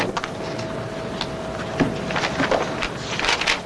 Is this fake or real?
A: real